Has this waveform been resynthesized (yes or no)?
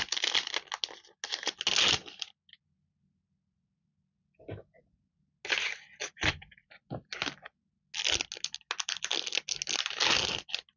no